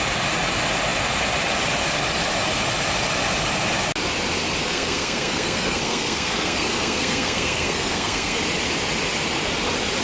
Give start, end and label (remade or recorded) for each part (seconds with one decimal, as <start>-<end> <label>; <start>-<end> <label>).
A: 0.0-4.6 recorded; 4.6-8.4 remade; 8.4-10.0 recorded